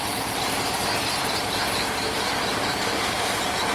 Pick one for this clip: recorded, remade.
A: recorded